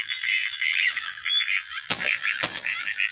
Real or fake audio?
fake